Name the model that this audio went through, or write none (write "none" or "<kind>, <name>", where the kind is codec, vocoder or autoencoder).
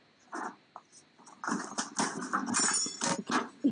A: none